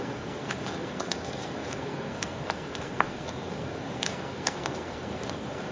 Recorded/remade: remade